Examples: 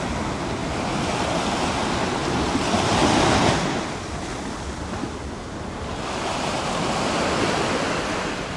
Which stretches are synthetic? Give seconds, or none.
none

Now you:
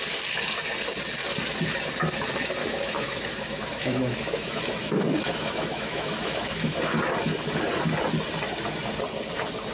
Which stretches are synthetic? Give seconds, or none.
2.6-6.8 (autoencoder, DAC-VAE)

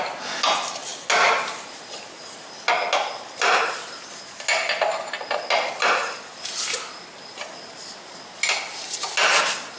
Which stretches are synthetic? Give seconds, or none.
none

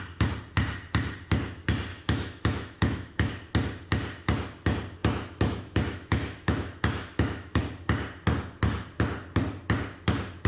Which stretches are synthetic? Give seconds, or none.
1.9-3.3 (autoencoder, DAC-VAE); 5.0-7.6

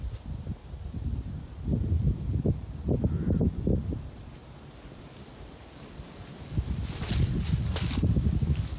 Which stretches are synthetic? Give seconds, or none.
none

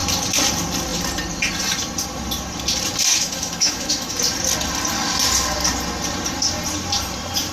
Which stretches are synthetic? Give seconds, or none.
3.1-4.2 (autoencoder, DAC-VAE)

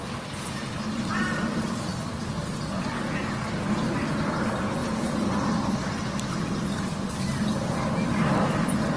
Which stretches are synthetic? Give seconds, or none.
none